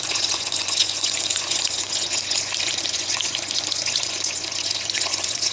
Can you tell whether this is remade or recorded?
remade